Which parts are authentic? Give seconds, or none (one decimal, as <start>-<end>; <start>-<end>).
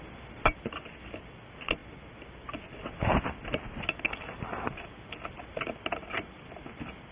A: 0.0-7.1